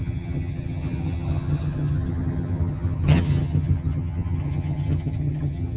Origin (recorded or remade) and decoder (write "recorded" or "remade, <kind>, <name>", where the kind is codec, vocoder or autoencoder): remade, vocoder, HiFi-GAN